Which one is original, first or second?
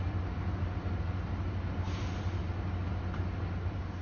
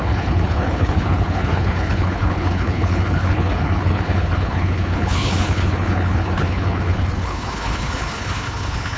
first